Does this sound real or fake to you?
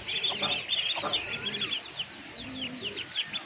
real